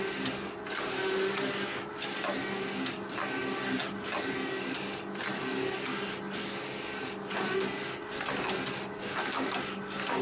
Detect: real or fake real